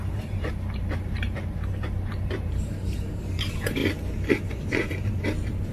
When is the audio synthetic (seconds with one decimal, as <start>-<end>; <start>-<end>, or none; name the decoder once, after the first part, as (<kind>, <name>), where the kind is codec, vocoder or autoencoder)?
0.0-5.7 (vocoder, BigVGAN v2)